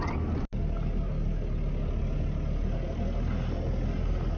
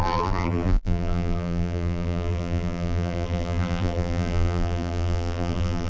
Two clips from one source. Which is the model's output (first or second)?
second